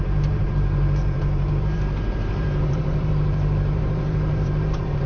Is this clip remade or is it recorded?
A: remade